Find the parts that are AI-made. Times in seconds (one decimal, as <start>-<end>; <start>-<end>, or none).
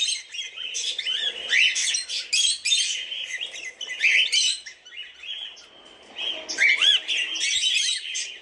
none